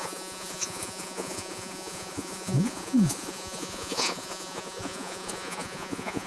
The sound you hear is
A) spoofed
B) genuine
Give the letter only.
A